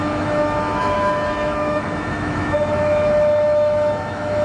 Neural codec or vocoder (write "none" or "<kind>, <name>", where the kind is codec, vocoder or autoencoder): autoencoder, DAC-VAE